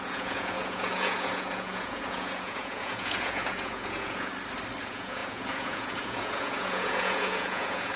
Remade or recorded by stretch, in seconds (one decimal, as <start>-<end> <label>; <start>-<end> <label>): 0.0-4.3 remade; 4.3-4.8 recorded; 4.8-8.0 remade